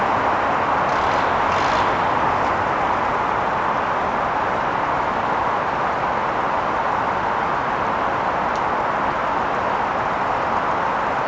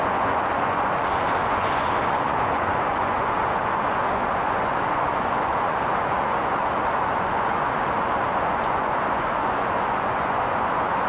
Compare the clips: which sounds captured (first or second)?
first